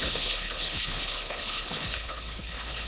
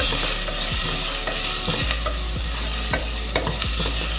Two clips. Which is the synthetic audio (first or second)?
first